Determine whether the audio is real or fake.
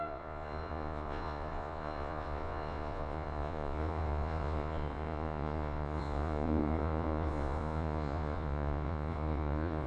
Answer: fake